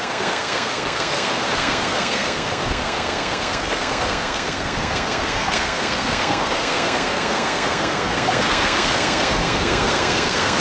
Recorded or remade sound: remade